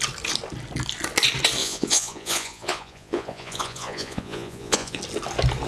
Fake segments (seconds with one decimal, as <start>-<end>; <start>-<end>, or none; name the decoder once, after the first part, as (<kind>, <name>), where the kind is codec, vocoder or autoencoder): 1.6-5.0 (vocoder, Vocos)